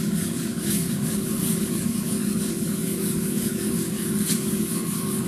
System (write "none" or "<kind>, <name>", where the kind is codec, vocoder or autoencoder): codec, DAC